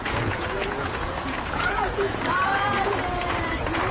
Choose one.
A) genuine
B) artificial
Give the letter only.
B